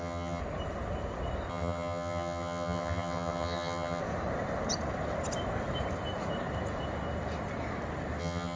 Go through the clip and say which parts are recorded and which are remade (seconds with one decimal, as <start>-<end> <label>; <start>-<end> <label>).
0.0-0.4 remade; 0.4-1.5 recorded; 1.5-4.0 remade; 4.0-8.2 recorded; 8.2-8.6 remade